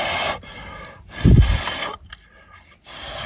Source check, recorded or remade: recorded